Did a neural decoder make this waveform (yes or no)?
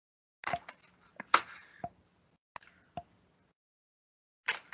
no